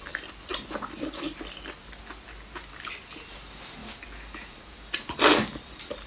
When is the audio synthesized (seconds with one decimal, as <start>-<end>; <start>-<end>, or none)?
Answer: none